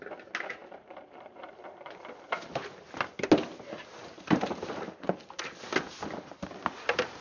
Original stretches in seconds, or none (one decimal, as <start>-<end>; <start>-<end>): 0.0-0.6; 2.0-3.9; 5.4-7.2